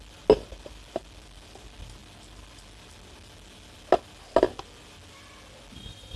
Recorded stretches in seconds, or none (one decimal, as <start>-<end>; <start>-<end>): 0.0-6.2